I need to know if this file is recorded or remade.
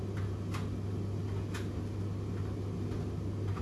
recorded